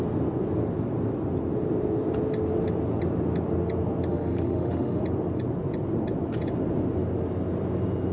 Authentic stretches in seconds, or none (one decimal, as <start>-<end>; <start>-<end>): 0.0-4.1; 5.0-8.1